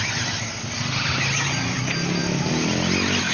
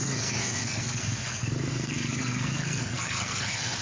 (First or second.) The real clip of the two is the first